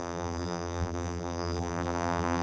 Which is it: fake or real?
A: fake